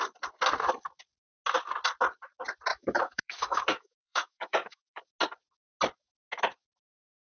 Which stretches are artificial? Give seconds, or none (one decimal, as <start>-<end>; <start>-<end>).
2.7-5.0